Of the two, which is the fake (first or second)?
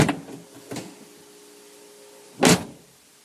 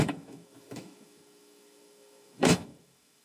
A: second